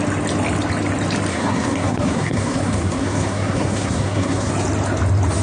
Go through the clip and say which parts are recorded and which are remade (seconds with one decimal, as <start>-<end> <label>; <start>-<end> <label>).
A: 0.0-1.3 recorded; 1.3-4.5 remade; 4.5-5.4 recorded